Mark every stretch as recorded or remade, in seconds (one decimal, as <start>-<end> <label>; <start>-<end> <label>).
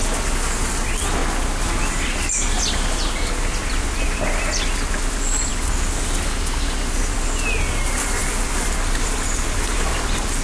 0.0-0.5 recorded; 0.5-1.2 remade; 1.2-1.8 recorded; 1.8-5.5 remade; 5.5-8.0 recorded; 8.0-10.4 remade